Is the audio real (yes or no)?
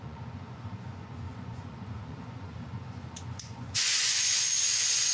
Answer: no